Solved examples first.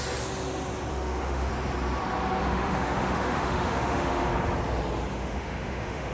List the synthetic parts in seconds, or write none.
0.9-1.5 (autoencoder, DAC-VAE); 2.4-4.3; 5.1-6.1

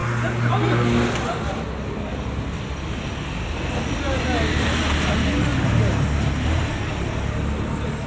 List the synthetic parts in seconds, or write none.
none

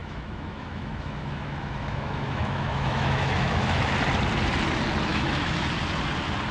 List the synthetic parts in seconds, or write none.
0.0-3.9 (autoencoder, DAC-VAE); 5.1-5.6

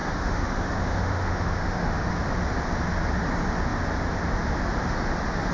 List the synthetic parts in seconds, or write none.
0.0-2.1 (autoencoder, DAC-VAE)

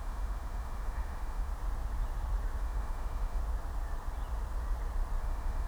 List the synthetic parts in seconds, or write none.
0.0-1.5 (autoencoder, DAC-VAE); 2.6-3.4; 5.2-5.7

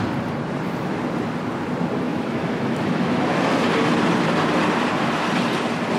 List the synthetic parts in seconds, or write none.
2.1-3.6 (autoencoder, DAC-VAE)

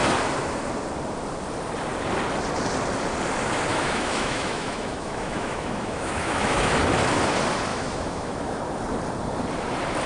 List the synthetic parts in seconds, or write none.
3.7-6.7 (autoencoder, DAC-VAE); 7.7-8.6